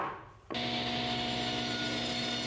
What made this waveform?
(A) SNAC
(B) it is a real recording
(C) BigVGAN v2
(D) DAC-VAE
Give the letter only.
B